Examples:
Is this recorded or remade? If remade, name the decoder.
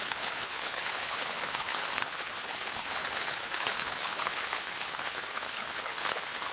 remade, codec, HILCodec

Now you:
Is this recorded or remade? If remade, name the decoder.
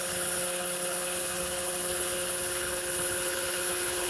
remade, codec, HILCodec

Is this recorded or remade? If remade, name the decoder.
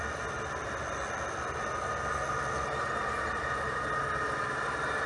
recorded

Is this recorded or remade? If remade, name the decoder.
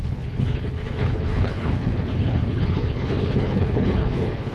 remade, codec, HILCodec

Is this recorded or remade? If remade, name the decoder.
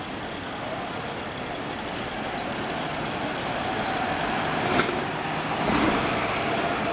recorded